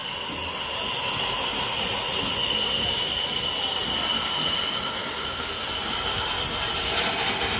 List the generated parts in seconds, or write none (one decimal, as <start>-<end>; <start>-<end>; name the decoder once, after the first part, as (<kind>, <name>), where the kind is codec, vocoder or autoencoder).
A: 5.0-5.5 (codec, DAC)